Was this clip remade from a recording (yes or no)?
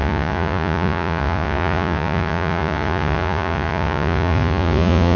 yes